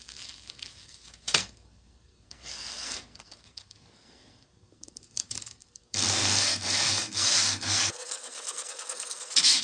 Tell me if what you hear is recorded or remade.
remade